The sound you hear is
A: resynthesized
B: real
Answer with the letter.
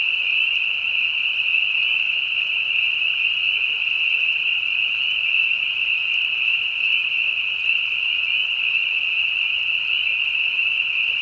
B